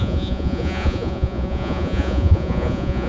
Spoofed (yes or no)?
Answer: yes